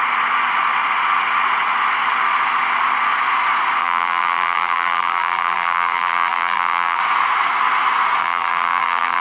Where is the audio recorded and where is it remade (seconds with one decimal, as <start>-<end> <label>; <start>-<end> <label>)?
0.0-3.8 recorded; 3.8-7.0 remade; 7.0-8.2 recorded; 8.2-9.2 remade